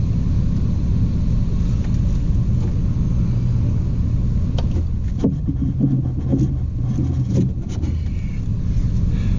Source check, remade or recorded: recorded